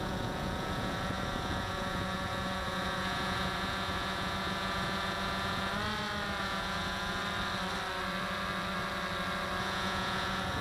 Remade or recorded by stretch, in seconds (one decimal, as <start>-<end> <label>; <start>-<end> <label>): 0.0-5.7 remade; 5.7-6.4 recorded; 6.4-7.2 remade; 7.2-9.6 recorded; 9.6-10.6 remade